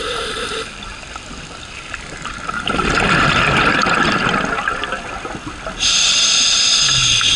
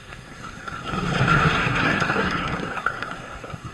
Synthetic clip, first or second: second